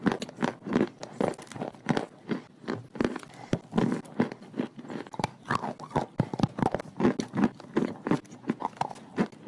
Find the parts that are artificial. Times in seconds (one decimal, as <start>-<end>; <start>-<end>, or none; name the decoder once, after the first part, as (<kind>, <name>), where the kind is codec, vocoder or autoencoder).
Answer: 1.0-1.6 (vocoder, BigVGAN v2)